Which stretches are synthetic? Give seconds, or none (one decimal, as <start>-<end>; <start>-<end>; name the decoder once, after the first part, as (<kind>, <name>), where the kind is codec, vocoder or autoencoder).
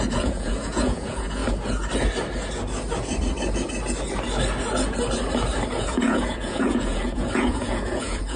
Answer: 0.0-1.4 (vocoder, Vocos); 5.8-8.4